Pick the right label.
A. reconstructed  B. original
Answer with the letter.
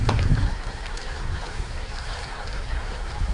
A